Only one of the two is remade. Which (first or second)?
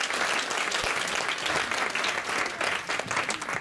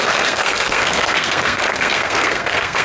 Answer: second